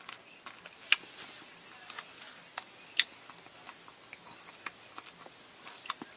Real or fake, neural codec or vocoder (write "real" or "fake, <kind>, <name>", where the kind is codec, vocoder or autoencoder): real